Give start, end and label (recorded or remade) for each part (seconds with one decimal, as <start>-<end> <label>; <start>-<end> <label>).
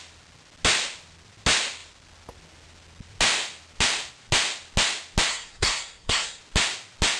0.0-5.3 recorded; 5.3-6.4 remade; 6.4-7.2 recorded